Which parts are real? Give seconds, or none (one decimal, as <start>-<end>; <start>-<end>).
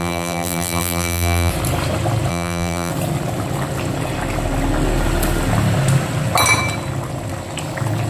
1.5-2.3; 2.9-8.1